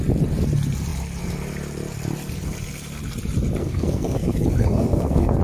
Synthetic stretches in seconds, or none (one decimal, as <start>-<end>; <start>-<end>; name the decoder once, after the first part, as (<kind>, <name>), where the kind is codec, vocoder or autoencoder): 3.6-5.4 (codec, SNAC)